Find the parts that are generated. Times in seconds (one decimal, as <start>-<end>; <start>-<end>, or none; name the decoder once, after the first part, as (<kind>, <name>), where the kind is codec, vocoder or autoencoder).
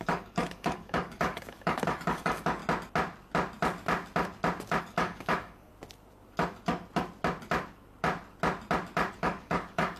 0.0-2.6 (codec, DAC); 4.8-5.7; 9.1-10.0